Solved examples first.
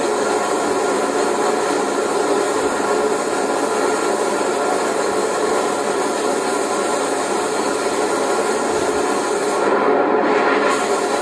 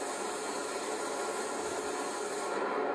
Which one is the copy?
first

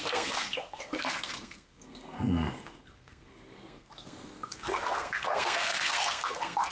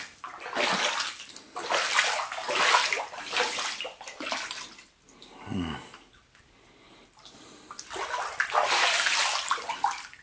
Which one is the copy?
first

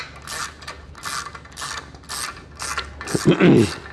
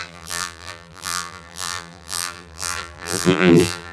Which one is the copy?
second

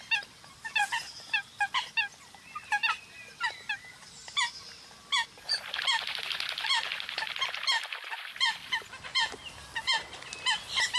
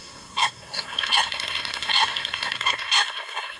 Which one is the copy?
second